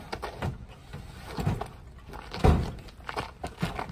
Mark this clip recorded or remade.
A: recorded